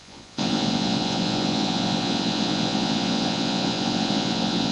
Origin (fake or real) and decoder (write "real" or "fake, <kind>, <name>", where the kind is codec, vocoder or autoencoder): fake, vocoder, Vocos